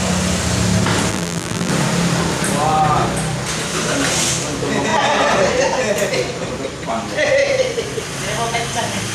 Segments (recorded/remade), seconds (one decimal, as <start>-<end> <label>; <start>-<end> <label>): 0.0-1.1 recorded; 1.1-1.7 remade; 1.7-9.1 recorded